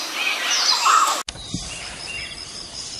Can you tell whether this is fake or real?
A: real